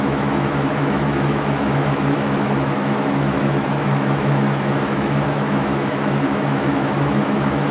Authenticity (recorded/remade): remade